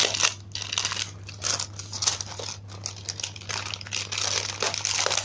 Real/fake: real